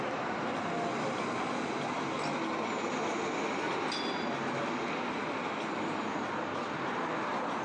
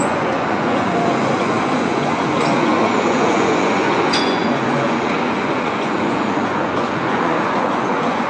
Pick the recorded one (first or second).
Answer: first